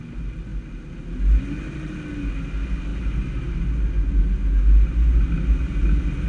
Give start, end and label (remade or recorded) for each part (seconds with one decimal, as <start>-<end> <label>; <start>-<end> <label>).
0.0-6.3 recorded